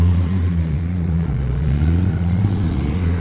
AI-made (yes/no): yes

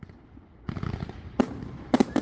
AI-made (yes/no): no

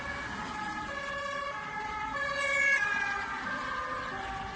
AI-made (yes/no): no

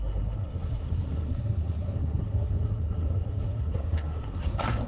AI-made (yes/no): yes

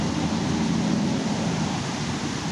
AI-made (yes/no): no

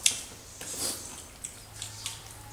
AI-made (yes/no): no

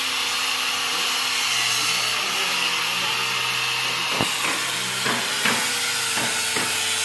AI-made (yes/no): no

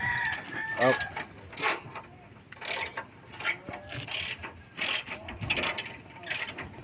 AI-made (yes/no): no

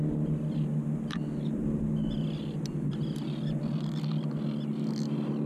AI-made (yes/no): no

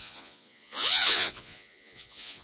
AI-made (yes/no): yes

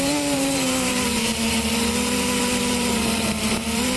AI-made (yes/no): yes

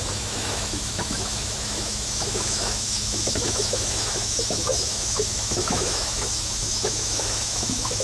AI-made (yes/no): yes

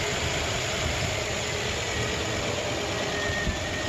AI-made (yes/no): no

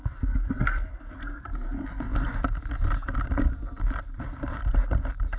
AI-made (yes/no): yes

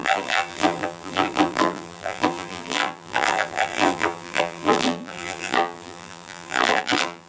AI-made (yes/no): yes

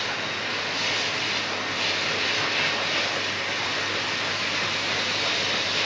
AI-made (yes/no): no